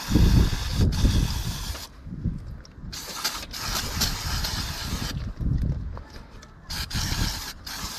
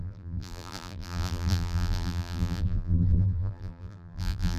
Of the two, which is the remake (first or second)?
second